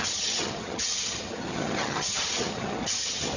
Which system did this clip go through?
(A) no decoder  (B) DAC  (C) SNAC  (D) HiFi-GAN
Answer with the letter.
D